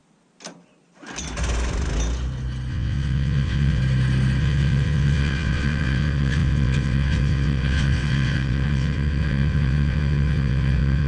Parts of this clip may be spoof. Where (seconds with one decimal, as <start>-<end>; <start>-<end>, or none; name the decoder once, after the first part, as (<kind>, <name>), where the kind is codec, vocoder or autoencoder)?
2.7-3.8 (vocoder, WaveNeXt); 4.4-11.1